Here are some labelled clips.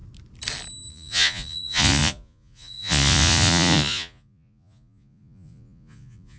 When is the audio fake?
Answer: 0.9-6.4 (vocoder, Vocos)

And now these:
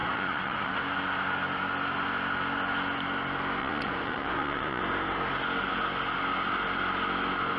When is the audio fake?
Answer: 0.0-0.8 (vocoder, Vocos); 3.6-4.8

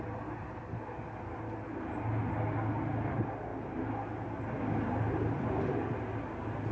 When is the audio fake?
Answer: 1.6-2.3 (vocoder, BigVGAN v2)

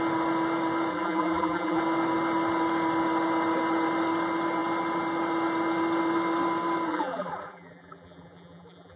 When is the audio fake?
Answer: 0.9-1.8 (vocoder, BigVGAN v2); 6.9-9.0

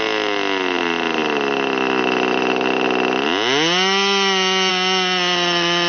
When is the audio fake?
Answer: none